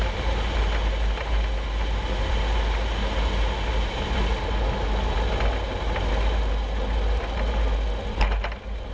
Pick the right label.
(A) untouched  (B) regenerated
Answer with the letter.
A